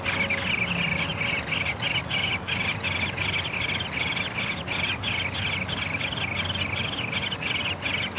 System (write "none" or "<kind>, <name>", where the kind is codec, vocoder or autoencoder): none